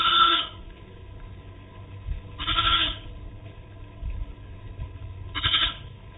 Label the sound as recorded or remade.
remade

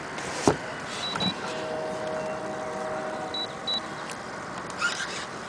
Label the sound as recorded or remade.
recorded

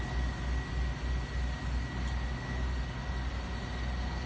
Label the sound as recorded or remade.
recorded